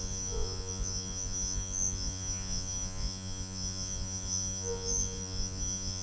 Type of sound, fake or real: fake